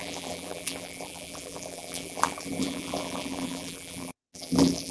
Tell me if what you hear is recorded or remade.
remade